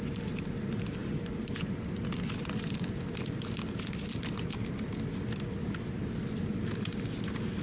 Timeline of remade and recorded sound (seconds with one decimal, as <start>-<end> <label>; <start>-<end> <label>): 0.0-7.6 recorded